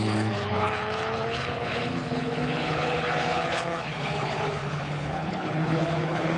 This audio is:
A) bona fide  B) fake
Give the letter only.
B